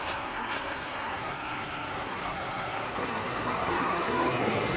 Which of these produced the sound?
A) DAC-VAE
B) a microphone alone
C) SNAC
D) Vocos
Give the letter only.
C